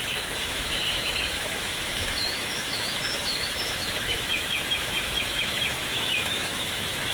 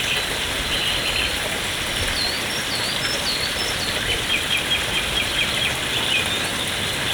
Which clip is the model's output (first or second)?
first